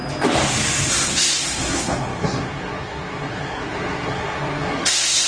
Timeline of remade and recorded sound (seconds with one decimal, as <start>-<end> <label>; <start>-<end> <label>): 0.0-0.9 recorded; 0.9-5.3 remade